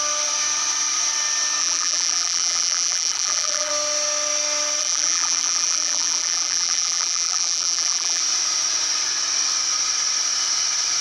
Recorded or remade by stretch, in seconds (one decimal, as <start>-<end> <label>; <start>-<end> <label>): 0.0-1.6 recorded; 1.6-3.7 remade; 3.7-4.8 recorded; 4.8-8.2 remade; 8.2-11.0 recorded